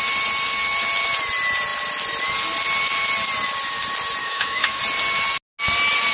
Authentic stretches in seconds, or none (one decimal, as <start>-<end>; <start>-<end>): 0.0-4.2; 4.8-6.1